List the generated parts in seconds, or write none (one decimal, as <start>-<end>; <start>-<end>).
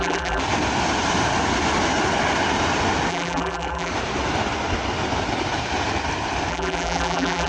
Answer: 0.0-0.4; 3.1-3.9; 6.5-7.5